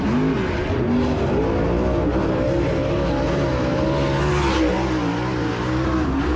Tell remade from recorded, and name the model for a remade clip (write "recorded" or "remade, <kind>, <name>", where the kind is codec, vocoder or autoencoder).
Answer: recorded